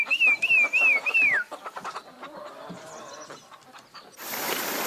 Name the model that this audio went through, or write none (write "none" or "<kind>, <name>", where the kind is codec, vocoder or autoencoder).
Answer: none